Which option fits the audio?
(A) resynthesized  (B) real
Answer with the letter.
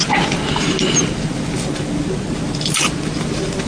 B